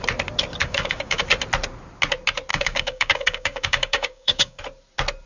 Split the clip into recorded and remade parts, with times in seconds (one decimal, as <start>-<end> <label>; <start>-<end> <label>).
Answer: 0.0-0.6 recorded; 0.6-1.2 remade; 1.2-2.5 recorded; 2.5-4.6 remade; 4.6-5.3 recorded